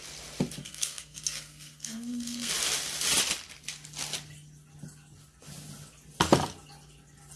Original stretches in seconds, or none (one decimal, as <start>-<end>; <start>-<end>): 0.0-0.6; 2.5-7.4